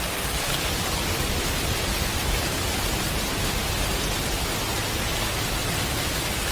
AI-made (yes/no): no